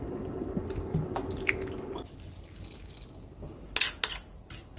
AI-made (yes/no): no